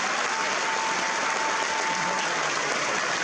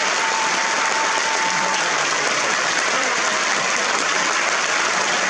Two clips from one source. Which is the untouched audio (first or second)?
first